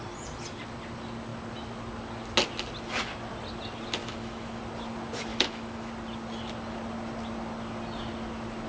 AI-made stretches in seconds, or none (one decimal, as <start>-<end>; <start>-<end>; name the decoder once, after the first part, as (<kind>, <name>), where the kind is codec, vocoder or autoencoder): 4.0-4.6 (autoencoder, DAC-VAE); 5.3-5.9